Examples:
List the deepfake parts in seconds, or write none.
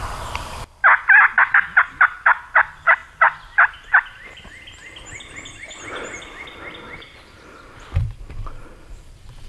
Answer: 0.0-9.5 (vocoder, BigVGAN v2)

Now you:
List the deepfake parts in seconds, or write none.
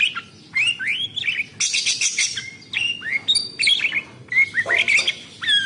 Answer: none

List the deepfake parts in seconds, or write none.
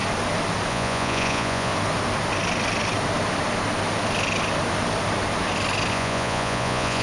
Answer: 0.7-1.7 (vocoder, Vocos); 5.9-7.0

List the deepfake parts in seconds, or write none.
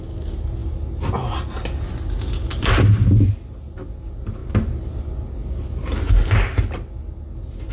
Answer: none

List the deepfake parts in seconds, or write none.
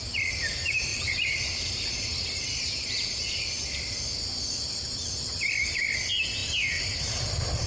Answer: 0.9-3.4 (vocoder, BigVGAN v2)